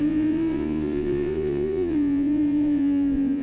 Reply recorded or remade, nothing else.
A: remade